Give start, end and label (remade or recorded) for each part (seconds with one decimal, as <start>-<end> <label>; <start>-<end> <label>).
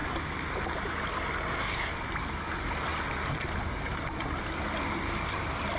0.0-5.8 recorded